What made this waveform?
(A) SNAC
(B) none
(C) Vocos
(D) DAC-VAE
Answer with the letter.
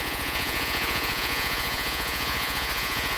C